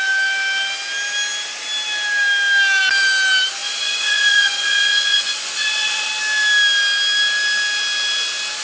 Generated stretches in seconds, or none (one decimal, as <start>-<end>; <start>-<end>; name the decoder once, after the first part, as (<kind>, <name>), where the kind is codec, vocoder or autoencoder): 3.6-6.1 (vocoder, Vocos)